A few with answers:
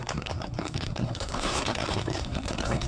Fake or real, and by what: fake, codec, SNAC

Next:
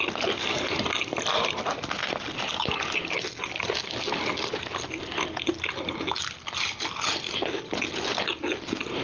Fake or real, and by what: real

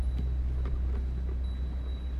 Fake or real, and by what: real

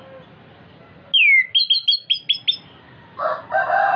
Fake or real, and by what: real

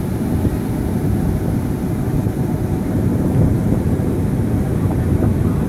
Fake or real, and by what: real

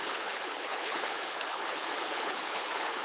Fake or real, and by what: fake, codec, HILCodec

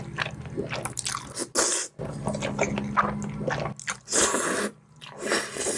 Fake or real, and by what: real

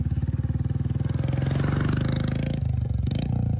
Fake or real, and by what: real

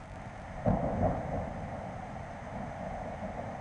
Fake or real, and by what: real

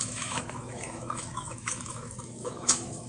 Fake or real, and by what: fake, autoencoder, DAC-VAE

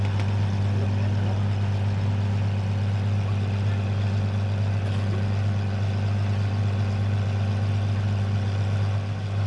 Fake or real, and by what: real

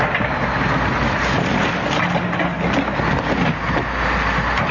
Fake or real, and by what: real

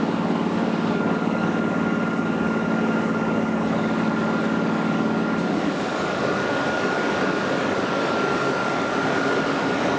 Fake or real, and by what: fake, codec, DAC